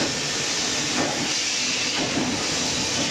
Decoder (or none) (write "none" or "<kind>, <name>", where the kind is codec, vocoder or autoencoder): none